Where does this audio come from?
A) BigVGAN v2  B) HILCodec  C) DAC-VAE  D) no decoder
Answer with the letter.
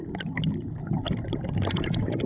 D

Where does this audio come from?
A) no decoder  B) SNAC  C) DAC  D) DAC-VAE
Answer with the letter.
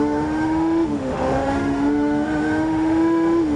D